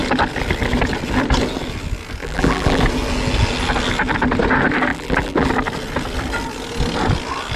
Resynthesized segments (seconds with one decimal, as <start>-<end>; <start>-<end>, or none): 2.2-2.8; 4.9-5.5